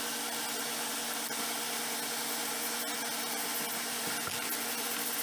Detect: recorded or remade recorded